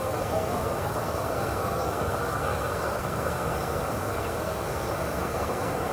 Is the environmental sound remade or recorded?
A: remade